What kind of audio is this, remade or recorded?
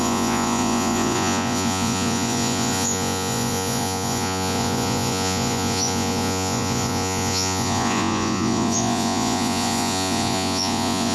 remade